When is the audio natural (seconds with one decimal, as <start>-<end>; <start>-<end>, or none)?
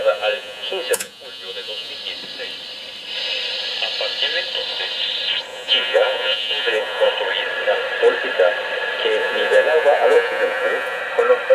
1.9-5.5; 7.1-9.2; 11.0-11.5